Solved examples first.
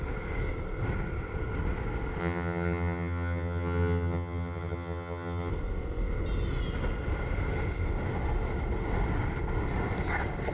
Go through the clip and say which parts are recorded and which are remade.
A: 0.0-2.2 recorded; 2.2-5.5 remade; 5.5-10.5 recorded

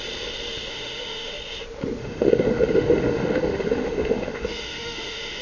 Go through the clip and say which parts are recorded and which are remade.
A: 0.0-0.7 recorded; 0.7-1.3 remade; 1.3-2.0 recorded; 2.0-5.4 remade

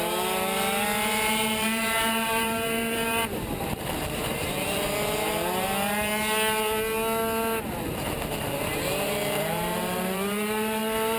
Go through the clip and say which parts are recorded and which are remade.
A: 0.0-6.1 remade; 6.1-7.8 recorded; 7.8-11.2 remade

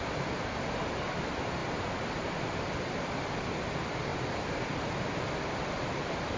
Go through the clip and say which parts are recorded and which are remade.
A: 0.0-1.6 remade; 1.6-2.7 recorded; 2.7-6.4 remade